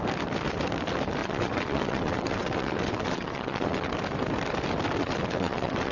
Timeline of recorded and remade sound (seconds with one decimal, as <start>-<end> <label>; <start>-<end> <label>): 0.0-1.2 recorded; 1.2-3.9 remade; 3.9-5.0 recorded; 5.0-5.9 remade